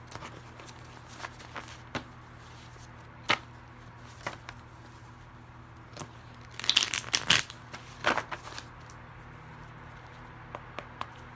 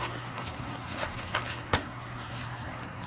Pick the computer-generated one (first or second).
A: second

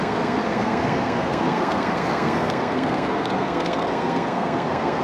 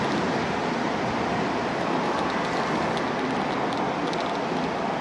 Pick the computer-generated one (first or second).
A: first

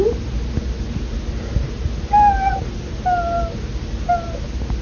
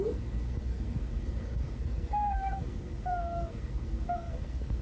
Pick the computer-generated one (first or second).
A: second